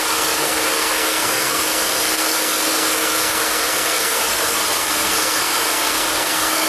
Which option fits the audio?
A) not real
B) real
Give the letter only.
A